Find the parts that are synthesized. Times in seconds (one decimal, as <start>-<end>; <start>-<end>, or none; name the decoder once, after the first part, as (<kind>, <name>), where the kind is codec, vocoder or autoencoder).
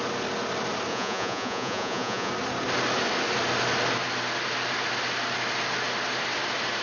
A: 0.9-2.3 (vocoder, Vocos)